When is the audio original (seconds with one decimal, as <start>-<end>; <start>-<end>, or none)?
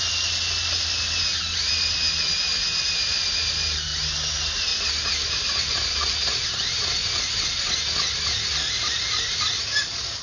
0.0-10.2